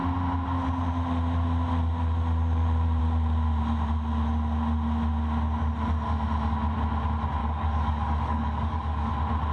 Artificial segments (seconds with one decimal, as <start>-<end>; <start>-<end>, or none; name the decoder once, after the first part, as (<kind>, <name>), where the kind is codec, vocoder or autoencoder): 7.4-9.1 (codec, DAC)